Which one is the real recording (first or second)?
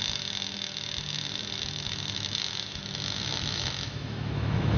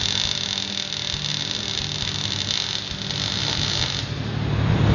second